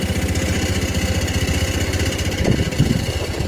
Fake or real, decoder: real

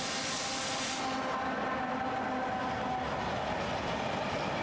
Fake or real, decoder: real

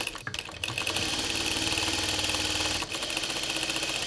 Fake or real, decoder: real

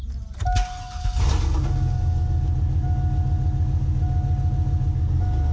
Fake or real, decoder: real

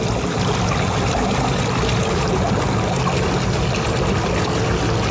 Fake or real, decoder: real